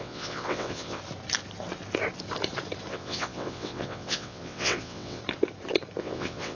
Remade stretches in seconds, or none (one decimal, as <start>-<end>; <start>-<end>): 0.0-1.0; 2.9-5.2; 6.0-6.5